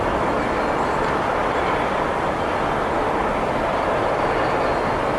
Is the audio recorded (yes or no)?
yes